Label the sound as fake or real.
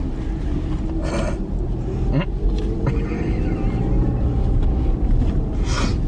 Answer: real